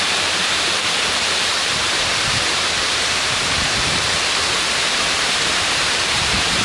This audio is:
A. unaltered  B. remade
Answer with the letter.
B